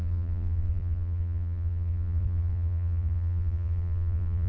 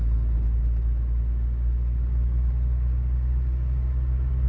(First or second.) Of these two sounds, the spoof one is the first